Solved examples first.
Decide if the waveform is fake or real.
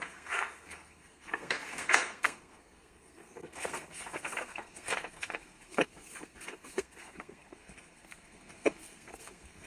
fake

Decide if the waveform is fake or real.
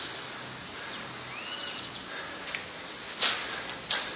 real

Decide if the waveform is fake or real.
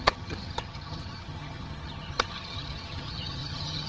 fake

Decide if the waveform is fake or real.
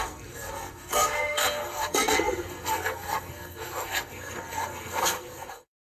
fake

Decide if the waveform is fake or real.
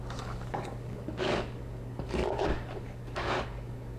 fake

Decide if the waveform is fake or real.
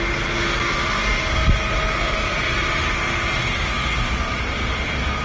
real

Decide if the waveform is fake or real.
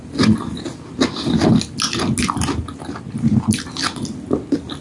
real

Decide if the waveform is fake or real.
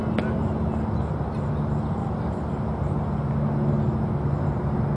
real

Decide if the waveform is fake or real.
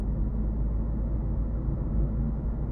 real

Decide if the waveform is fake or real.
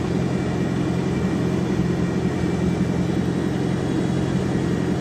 real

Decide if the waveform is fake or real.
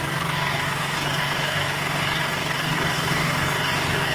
fake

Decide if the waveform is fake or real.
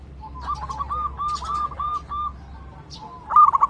real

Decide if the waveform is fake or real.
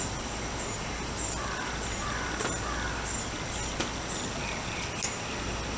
real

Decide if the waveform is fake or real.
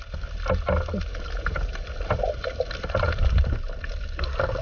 real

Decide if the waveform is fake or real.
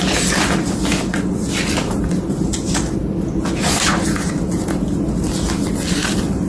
real